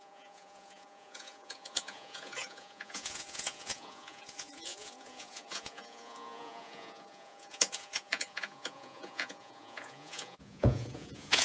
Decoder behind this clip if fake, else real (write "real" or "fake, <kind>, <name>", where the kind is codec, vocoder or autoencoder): fake, vocoder, Vocos